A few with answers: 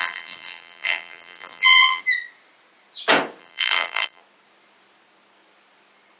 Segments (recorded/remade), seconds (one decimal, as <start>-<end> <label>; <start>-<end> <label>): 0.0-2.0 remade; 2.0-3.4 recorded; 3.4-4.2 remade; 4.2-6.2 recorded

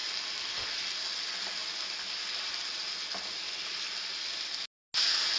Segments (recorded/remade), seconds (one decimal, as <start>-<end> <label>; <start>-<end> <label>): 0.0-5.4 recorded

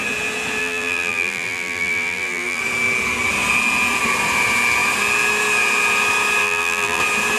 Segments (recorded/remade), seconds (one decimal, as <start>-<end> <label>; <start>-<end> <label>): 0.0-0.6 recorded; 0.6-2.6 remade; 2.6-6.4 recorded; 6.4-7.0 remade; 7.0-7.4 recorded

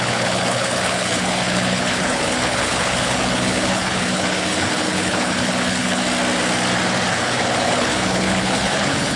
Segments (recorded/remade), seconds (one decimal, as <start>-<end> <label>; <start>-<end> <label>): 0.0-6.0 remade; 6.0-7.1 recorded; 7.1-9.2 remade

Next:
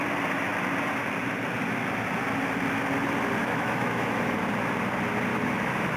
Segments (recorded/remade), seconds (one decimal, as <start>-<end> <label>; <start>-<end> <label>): 0.0-3.4 recorded; 3.4-4.5 remade; 4.5-5.3 recorded; 5.3-6.0 remade

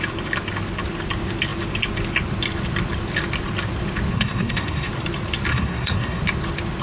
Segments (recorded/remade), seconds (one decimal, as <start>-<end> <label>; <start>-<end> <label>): 0.0-4.1 recorded; 4.1-4.9 remade; 4.9-5.5 recorded; 5.5-6.2 remade; 6.2-6.8 recorded

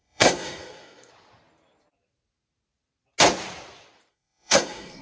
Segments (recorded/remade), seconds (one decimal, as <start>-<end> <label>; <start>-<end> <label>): 0.0-1.1 remade; 1.1-4.1 recorded; 4.1-5.0 remade